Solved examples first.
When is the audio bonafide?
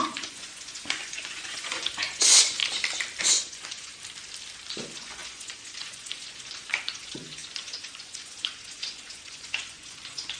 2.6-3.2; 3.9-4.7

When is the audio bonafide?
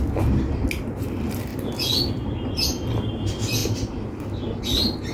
0.0-5.1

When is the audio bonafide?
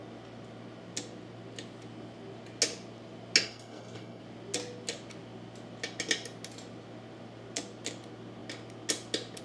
0.0-3.4; 4.2-9.4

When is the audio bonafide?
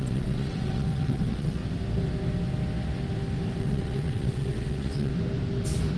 1.6-3.6; 5.1-6.0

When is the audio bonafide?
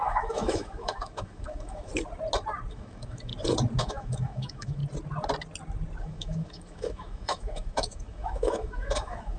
1.9-2.7; 3.3-3.8; 4.8-6.0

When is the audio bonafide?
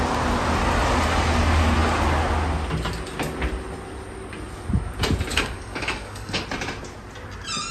0.0-5.3; 6.4-7.7